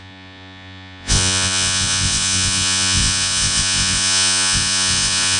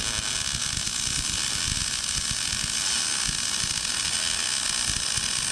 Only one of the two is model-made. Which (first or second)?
first